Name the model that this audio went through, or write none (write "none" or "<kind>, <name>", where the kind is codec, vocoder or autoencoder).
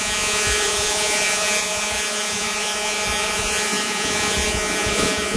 vocoder, Vocos